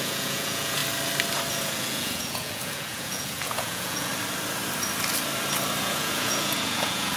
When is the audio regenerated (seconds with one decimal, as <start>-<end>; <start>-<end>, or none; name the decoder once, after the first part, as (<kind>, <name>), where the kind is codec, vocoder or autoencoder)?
0.0-0.8 (vocoder, Vocos); 1.5-4.1; 5.8-7.2